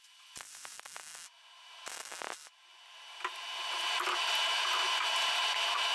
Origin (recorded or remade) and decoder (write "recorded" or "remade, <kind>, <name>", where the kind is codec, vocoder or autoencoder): recorded